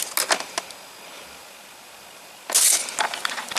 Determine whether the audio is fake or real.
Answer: real